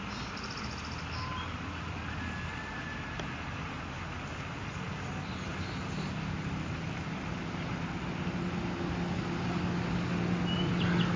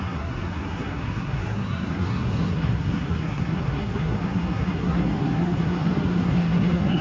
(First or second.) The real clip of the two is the first